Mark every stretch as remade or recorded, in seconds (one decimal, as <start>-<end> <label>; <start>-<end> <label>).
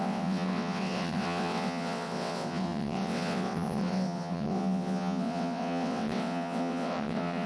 0.0-7.5 remade